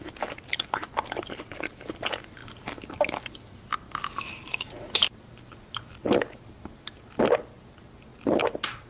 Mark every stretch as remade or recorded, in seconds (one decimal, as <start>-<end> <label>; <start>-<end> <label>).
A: 0.0-8.9 recorded